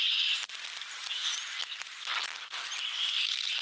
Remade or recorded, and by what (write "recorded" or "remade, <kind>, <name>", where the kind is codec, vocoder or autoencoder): recorded